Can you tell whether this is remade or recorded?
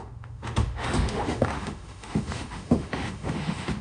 remade